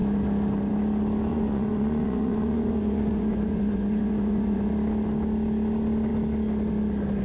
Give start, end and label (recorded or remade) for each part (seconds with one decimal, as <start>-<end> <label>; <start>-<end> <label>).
0.0-1.3 recorded; 1.3-4.7 remade; 4.7-7.2 recorded